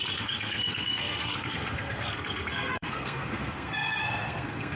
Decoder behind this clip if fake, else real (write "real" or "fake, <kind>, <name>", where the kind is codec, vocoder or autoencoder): fake, codec, SNAC